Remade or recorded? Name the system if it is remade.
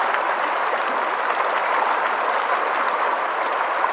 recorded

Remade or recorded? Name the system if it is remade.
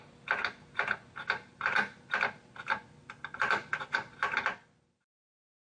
recorded